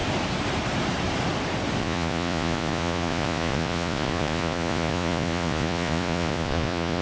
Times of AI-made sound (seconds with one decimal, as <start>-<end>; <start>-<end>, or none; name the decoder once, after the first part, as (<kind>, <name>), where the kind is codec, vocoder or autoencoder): 1.8-7.0 (vocoder, Vocos)